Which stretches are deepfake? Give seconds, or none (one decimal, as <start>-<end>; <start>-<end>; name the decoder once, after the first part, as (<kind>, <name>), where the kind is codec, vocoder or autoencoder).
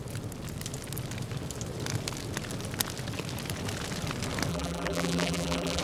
4.5-5.8 (vocoder, BigVGAN v2)